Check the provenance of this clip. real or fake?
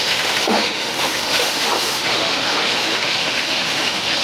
fake